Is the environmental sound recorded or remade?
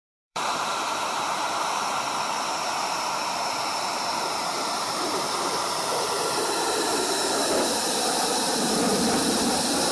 remade